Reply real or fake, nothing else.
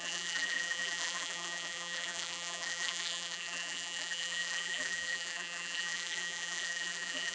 fake